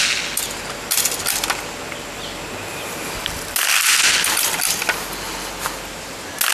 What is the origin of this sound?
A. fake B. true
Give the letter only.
B